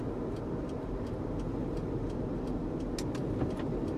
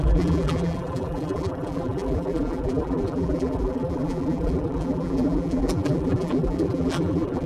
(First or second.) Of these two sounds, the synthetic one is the second